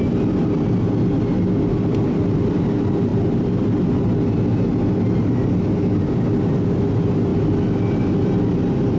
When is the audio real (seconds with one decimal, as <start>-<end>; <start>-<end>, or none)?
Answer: 0.0-9.0